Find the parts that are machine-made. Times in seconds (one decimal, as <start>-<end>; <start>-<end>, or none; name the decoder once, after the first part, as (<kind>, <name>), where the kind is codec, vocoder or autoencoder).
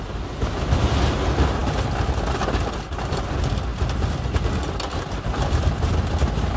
none